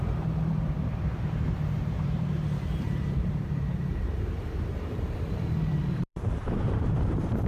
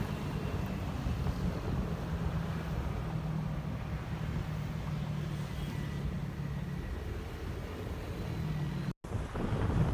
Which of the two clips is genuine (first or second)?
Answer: second